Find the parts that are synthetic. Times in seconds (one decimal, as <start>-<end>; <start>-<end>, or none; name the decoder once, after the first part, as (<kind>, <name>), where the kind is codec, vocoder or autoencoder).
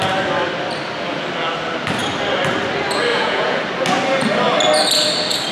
3.1-3.6 (vocoder, Vocos)